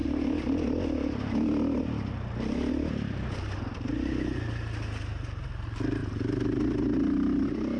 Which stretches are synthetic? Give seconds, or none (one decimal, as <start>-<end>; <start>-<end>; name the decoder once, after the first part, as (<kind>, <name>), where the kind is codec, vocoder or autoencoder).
none